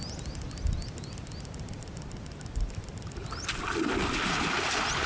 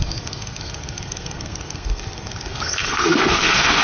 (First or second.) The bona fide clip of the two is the first